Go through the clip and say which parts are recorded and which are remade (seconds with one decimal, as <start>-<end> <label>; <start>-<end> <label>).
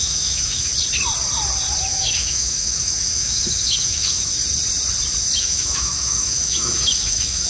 0.0-0.7 remade; 0.7-1.9 recorded; 1.9-4.4 remade; 4.4-5.4 recorded; 5.4-7.5 remade